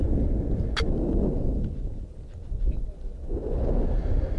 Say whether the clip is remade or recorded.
recorded